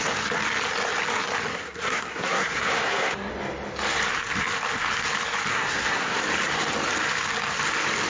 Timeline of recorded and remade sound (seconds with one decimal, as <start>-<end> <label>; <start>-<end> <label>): 0.0-1.5 recorded; 1.5-3.3 remade; 3.3-5.5 recorded; 5.5-6.2 remade; 6.2-8.1 recorded